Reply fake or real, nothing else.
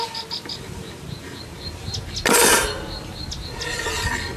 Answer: real